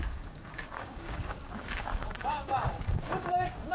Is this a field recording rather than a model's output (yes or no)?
no